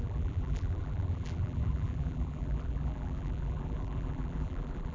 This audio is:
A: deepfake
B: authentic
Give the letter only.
A